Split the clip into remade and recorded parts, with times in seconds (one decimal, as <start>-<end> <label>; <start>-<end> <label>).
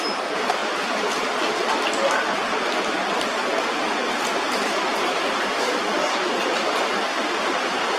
0.0-8.0 recorded